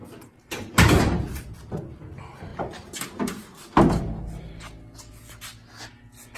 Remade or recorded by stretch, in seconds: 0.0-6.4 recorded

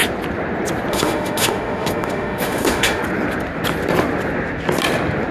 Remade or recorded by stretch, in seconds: 0.0-0.9 recorded; 0.9-3.0 remade; 3.0-5.3 recorded